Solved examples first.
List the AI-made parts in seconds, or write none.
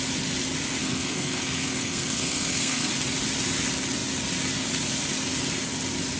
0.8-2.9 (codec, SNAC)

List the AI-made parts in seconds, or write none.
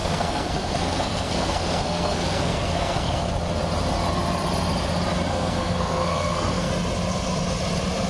0.0-3.3 (codec, SNAC); 5.3-6.7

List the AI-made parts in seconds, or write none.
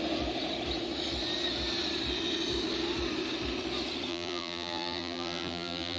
4.1-6.0 (vocoder, BigVGAN v2)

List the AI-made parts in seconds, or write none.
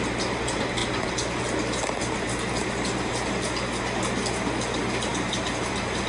5.1-6.1 (vocoder, BigVGAN v2)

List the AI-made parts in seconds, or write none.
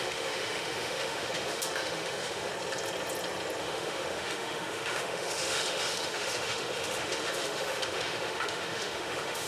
0.0-2.5 (autoencoder, DAC-VAE); 3.6-9.5